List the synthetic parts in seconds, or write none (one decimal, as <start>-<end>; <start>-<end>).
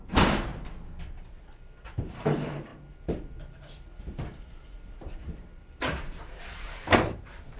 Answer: 0.0-0.5; 2.0-2.7; 4.0-7.6